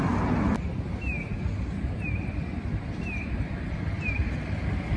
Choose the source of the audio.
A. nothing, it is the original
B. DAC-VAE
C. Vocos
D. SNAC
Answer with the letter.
A